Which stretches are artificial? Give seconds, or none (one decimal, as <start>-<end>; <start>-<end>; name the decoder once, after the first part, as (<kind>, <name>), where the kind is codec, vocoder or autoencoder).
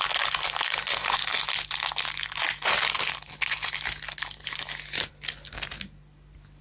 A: none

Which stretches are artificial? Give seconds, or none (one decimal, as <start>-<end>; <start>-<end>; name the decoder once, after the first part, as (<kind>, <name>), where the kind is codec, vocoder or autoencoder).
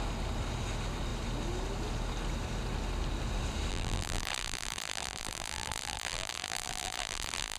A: 3.7-7.6 (vocoder, BigVGAN v2)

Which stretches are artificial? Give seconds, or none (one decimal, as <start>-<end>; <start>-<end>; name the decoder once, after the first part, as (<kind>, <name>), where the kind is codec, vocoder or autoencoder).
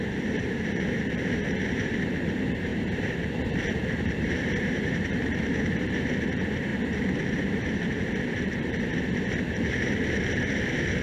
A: 0.0-6.7 (vocoder, BigVGAN v2); 7.5-8.9; 9.4-11.0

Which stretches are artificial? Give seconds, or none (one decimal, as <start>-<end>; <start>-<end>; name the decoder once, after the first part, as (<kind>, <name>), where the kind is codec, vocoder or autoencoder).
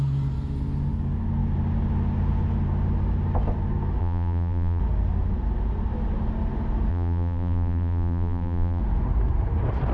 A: 4.0-4.8 (vocoder, BigVGAN v2); 6.9-8.8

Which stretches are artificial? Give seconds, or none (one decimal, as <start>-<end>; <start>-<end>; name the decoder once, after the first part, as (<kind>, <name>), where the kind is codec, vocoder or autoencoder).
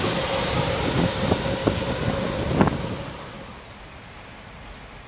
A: 0.0-1.1 (vocoder, BigVGAN v2); 3.8-5.1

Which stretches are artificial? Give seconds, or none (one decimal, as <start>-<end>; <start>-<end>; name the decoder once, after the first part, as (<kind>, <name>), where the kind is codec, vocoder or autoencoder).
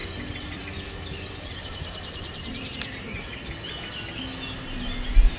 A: 0.0-2.7 (vocoder, BigVGAN v2)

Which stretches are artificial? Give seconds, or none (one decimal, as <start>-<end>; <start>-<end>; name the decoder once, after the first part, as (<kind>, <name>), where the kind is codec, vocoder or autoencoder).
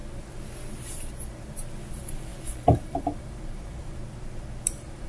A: 1.9-4.0 (vocoder, BigVGAN v2); 4.6-5.1